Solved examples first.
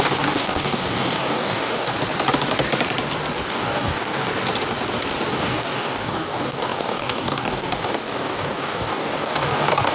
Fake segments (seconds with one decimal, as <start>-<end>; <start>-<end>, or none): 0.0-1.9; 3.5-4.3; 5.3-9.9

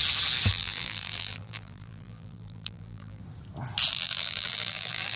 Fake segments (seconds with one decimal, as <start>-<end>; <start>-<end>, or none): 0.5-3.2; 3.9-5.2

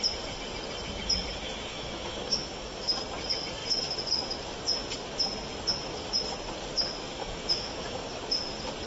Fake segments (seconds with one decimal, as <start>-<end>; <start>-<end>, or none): 1.7-2.9; 7.2-8.2

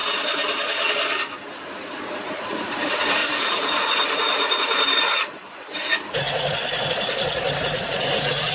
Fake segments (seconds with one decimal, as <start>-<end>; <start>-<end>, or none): 1.5-8.5

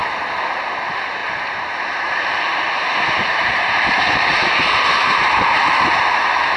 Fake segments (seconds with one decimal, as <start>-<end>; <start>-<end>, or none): 0.6-2.5; 3.4-6.6